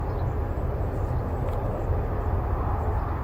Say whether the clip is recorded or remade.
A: recorded